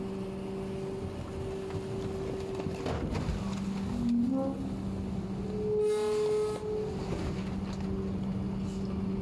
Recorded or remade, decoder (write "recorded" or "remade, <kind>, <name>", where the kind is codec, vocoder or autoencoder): recorded